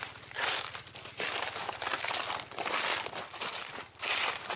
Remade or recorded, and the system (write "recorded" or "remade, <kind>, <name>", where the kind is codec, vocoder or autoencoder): recorded